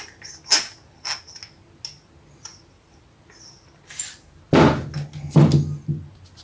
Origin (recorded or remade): recorded